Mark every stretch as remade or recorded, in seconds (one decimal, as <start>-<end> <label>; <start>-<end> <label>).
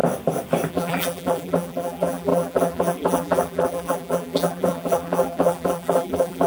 0.0-0.7 recorded; 0.7-6.5 remade